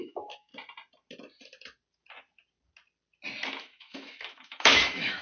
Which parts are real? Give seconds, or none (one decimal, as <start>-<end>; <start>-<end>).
0.5-3.6